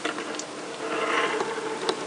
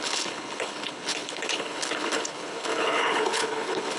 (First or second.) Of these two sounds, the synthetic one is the second